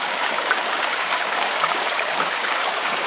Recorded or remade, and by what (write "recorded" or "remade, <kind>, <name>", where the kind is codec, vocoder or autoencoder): remade, codec, DAC